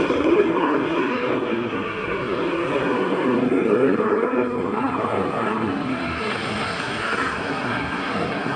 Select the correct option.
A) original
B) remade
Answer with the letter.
B